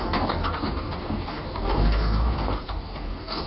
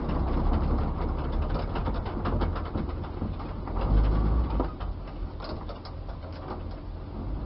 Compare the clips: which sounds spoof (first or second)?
first